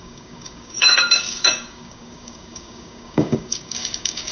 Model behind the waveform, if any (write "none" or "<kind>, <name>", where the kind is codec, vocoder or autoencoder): codec, DAC